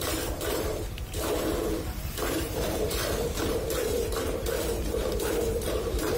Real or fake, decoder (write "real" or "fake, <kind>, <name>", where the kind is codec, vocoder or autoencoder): fake, vocoder, BigVGAN v2